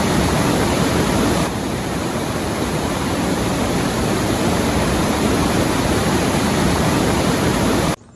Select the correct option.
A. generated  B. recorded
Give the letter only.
A